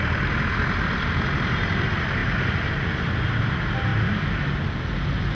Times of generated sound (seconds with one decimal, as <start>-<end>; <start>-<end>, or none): none